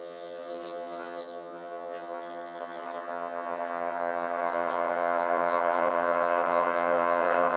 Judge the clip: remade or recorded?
remade